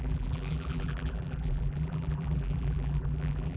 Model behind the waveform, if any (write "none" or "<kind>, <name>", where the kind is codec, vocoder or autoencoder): vocoder, BigVGAN v2